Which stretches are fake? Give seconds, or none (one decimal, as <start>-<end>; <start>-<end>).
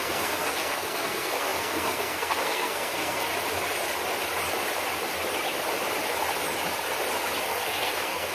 0.0-3.3; 7.4-8.3